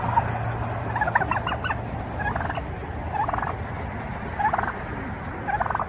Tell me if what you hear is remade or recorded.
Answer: recorded